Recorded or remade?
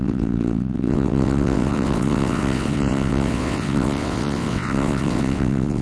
remade